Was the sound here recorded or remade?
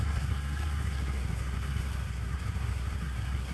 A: remade